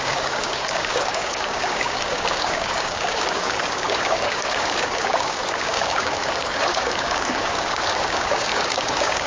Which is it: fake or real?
fake